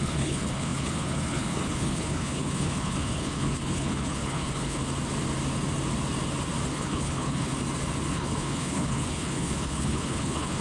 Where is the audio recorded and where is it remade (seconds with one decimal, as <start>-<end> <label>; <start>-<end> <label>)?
0.0-4.8 remade; 4.8-6.7 recorded; 6.7-7.5 remade; 7.5-8.1 recorded; 8.1-10.6 remade